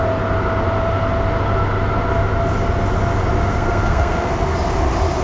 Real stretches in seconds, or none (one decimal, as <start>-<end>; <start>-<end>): 0.0-3.5; 4.3-5.2